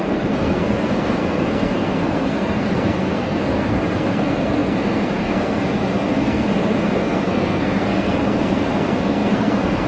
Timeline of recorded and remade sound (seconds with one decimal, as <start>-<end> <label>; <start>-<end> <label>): 0.0-9.9 remade